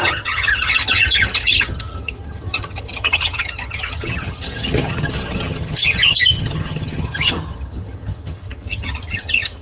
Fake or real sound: fake